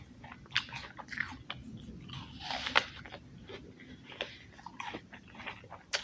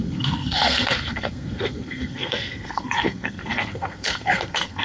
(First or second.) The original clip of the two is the first